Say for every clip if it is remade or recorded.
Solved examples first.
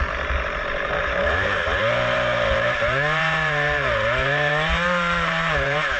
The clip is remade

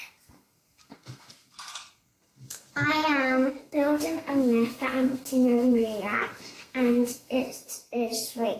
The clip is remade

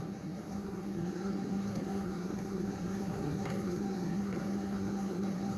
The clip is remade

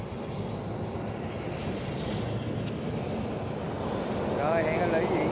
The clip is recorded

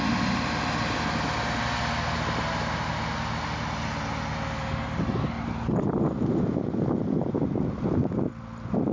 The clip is recorded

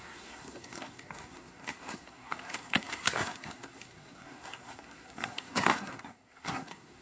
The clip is remade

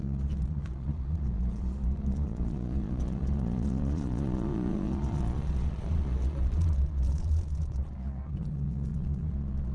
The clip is remade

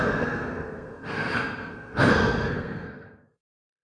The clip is remade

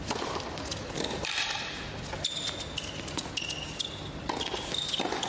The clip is recorded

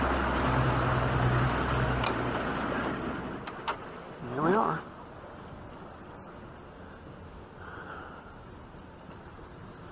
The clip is recorded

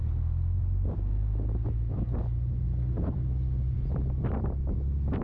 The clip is remade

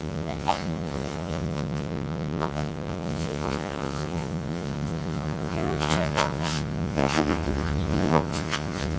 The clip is remade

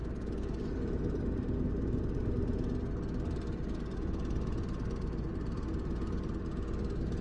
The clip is recorded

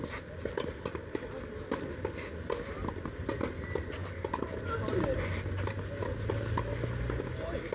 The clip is recorded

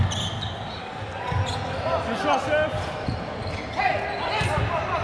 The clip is recorded